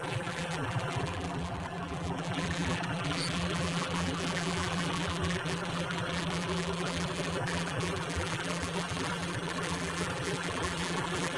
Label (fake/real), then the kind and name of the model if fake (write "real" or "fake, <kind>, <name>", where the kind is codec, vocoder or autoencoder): fake, vocoder, BigVGAN v2